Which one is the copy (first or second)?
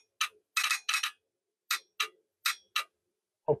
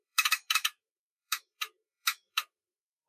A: second